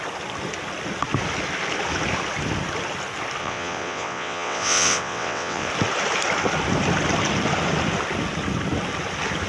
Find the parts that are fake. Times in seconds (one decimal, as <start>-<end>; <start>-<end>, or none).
3.4-5.7